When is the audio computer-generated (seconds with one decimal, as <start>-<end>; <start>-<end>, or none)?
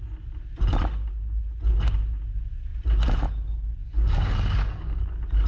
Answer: 3.8-5.0